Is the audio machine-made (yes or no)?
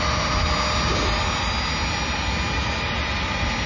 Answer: no